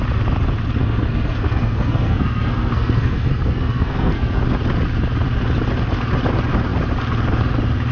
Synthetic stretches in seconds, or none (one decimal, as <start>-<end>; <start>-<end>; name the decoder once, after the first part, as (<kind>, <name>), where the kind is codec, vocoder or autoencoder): 0.8-4.4 (codec, SNAC)